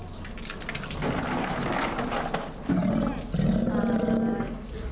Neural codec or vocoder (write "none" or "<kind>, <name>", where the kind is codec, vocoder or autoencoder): none